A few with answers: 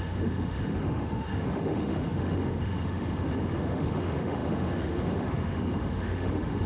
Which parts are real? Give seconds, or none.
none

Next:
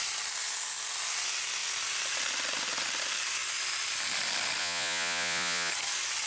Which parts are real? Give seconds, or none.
0.0-4.6; 5.7-6.3

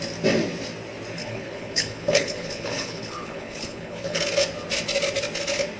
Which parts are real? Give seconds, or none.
0.0-1.2; 4.2-5.8

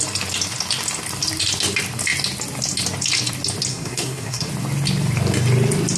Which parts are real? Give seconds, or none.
0.0-3.7; 4.5-6.0

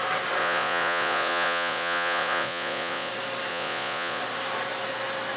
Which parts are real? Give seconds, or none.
0.0-0.4; 3.1-3.5; 4.2-5.4